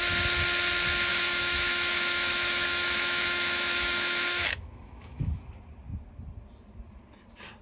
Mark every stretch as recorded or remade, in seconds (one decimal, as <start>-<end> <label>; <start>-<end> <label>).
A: 0.0-1.1 recorded; 1.1-5.3 remade; 5.3-7.6 recorded